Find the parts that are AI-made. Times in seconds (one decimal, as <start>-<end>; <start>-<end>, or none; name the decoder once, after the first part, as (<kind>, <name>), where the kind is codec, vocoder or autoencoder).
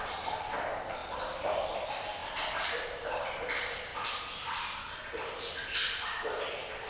none